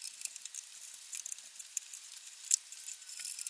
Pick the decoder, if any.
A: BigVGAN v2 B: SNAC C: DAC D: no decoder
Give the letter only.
D